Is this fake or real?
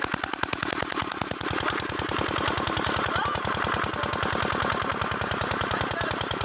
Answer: real